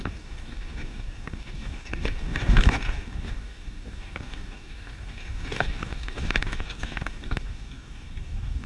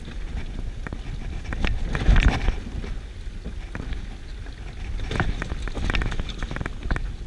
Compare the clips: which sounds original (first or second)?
second